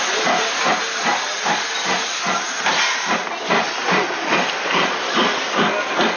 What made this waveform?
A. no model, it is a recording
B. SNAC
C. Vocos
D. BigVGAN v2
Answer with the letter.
A